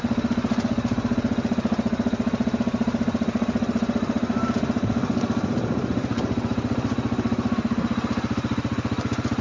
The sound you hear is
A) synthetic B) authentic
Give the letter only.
B